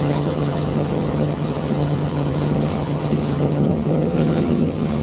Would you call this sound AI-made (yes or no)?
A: yes